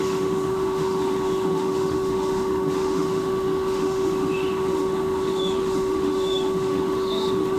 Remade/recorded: remade